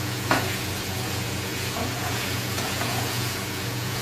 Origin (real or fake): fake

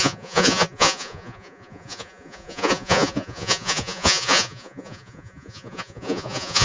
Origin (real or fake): fake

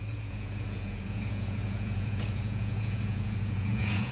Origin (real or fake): fake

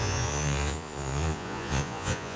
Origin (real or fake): fake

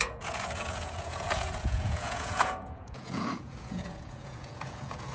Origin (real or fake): fake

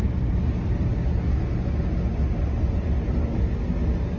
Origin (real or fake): real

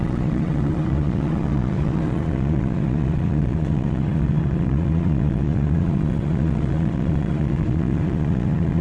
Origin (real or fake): fake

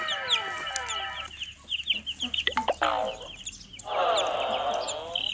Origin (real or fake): real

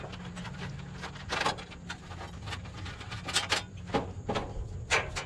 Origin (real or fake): real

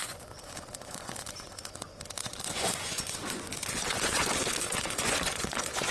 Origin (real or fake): fake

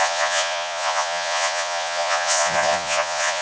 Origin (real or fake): fake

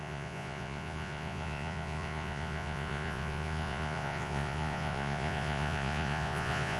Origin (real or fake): fake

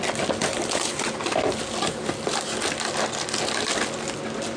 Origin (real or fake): real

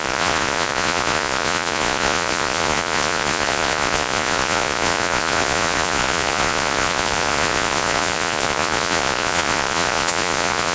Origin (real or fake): fake